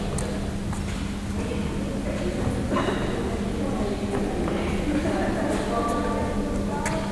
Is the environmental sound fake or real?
real